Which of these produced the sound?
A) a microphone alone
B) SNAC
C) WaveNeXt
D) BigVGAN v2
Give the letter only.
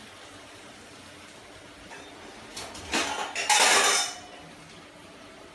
A